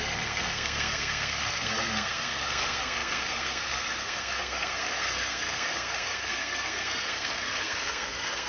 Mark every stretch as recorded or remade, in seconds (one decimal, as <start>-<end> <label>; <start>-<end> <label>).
0.0-8.5 remade